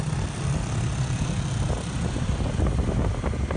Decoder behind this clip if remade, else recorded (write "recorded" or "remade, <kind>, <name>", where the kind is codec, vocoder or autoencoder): recorded